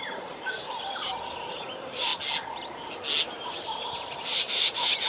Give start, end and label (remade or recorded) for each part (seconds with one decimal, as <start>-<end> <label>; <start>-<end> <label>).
0.0-2.1 remade; 2.1-3.5 recorded; 3.5-5.1 remade